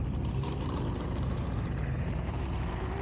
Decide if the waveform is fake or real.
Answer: fake